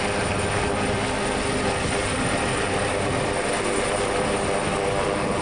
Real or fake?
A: real